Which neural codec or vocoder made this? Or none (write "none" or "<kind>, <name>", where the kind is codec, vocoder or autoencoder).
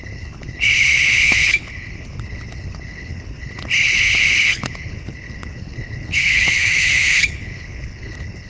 codec, HILCodec